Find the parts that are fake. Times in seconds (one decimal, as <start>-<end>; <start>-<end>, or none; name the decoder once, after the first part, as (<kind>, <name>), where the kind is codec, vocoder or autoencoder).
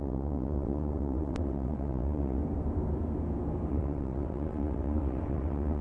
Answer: 0.0-2.4 (vocoder, WaveNeXt); 3.7-5.8